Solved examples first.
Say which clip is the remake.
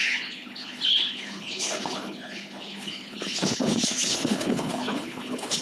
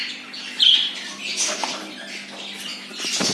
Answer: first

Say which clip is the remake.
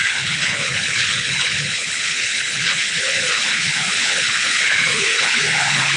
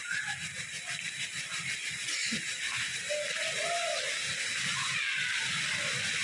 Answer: first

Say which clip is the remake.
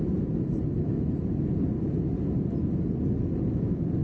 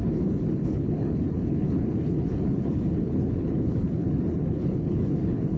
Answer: second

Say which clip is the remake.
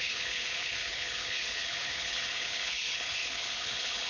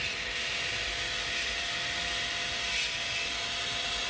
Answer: first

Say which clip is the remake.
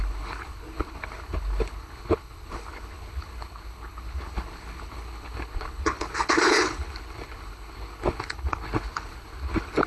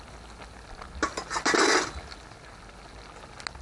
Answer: first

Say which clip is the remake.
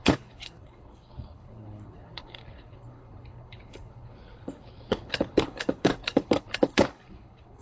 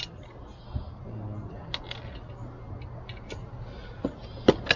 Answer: first